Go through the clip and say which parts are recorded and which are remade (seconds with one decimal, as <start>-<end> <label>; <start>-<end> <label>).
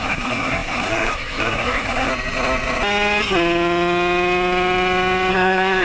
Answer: 0.0-2.1 remade; 2.1-5.3 recorded; 5.3-5.8 remade